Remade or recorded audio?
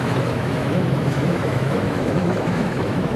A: remade